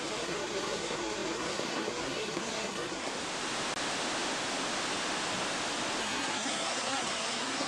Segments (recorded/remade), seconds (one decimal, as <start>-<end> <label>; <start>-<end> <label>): 0.0-3.1 remade; 3.1-6.0 recorded; 6.0-7.7 remade